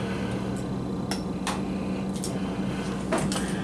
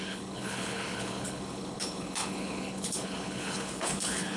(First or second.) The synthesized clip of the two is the second